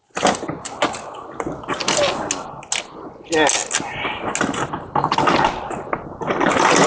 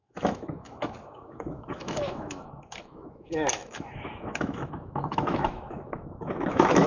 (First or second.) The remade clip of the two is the second